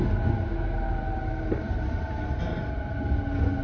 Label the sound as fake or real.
real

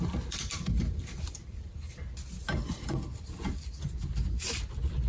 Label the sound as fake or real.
real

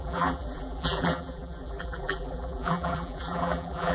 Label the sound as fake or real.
fake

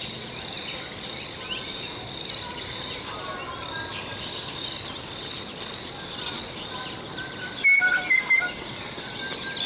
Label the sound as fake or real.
real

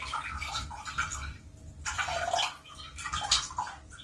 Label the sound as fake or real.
real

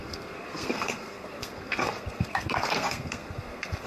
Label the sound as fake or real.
fake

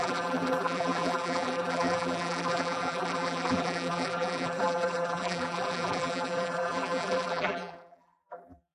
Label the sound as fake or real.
fake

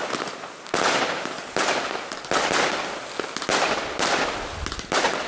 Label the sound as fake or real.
real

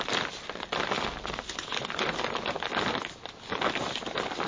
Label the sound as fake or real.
real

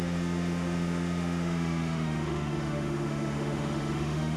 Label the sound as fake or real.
fake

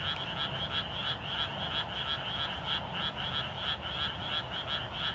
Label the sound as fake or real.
real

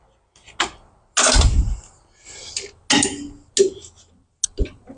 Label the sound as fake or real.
real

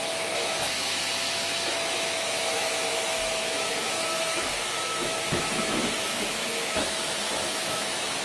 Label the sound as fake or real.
fake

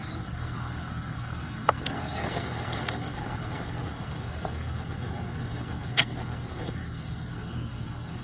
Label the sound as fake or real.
fake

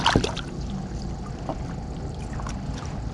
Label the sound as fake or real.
real